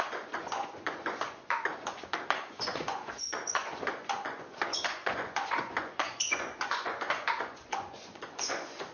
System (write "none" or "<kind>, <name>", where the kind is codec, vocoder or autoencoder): vocoder, Vocos